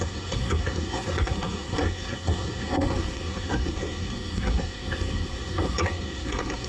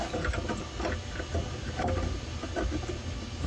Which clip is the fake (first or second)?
first